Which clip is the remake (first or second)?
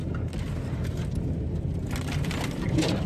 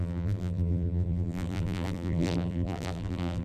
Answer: second